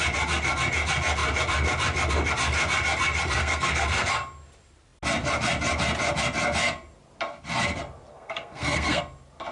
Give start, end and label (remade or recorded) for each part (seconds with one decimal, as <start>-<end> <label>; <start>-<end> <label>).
0.0-3.4 recorded; 3.4-4.1 remade; 4.1-8.1 recorded; 8.1-9.0 remade; 9.0-9.5 recorded